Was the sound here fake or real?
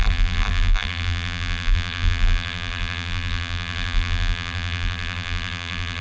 fake